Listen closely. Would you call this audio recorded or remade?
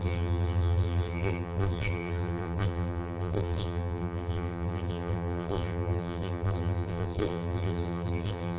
remade